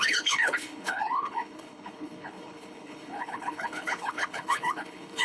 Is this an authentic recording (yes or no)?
no